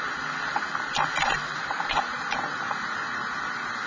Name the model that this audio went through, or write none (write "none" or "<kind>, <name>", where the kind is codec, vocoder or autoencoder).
none